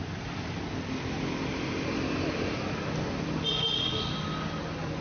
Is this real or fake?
real